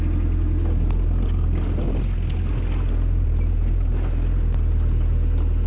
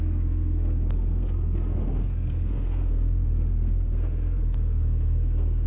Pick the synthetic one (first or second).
second